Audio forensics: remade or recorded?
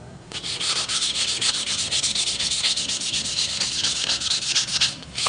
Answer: remade